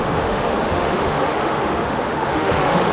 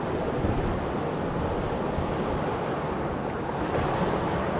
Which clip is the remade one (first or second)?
first